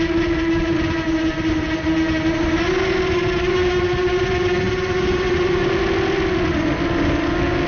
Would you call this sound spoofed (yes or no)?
no